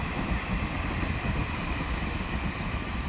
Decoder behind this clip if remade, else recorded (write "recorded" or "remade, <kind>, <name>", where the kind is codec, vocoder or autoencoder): recorded